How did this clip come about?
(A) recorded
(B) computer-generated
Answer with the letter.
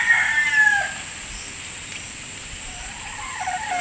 A